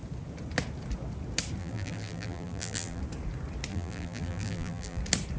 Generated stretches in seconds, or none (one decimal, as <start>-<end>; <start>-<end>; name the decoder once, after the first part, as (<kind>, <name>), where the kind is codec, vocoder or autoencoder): 1.6-3.0 (vocoder, BigVGAN v2); 3.7-5.0